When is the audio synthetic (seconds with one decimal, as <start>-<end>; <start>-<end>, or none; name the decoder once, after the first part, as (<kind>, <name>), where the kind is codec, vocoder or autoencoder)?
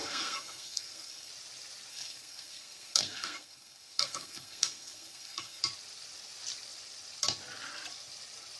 0.0-1.3 (codec, SNAC); 1.9-5.6